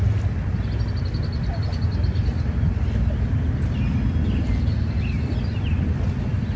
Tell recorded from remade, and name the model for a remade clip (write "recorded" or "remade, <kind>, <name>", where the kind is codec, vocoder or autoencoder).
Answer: recorded